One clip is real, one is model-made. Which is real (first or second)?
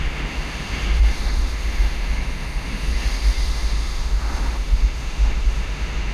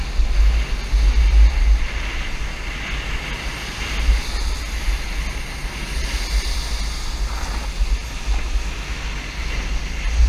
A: second